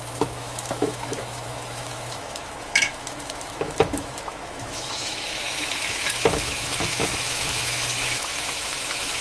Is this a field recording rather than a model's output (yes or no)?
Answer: no